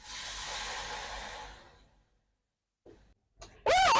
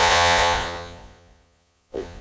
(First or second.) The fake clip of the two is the second